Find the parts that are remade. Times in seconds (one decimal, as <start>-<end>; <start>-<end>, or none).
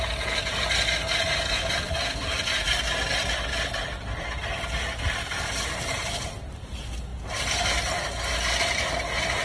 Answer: none